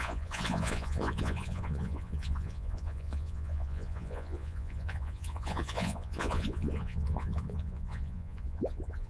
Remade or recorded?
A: remade